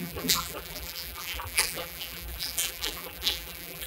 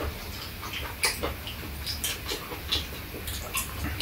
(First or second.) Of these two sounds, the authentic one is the second